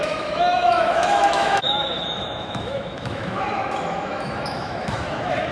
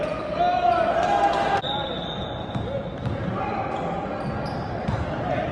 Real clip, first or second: second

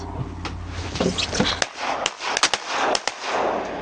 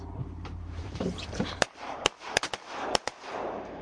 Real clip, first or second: first